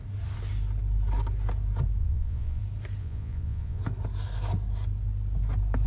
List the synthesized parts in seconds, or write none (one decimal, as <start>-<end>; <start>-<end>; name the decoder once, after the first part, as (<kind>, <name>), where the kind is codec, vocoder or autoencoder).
2.0-2.6 (vocoder, Vocos); 3.0-3.8